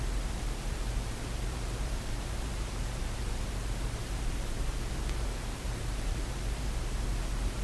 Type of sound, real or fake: fake